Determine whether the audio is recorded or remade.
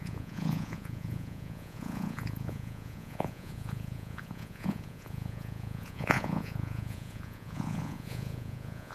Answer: remade